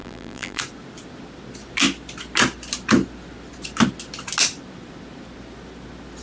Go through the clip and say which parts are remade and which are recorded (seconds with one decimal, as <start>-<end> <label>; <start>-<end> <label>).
0.0-0.6 remade; 0.6-6.2 recorded